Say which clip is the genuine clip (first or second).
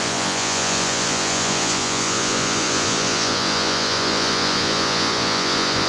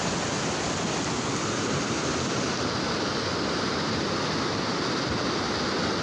second